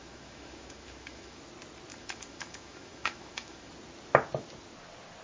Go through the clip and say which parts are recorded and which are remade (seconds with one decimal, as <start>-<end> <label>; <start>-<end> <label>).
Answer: 0.0-1.4 remade; 1.4-1.9 recorded; 1.9-3.7 remade; 3.7-5.2 recorded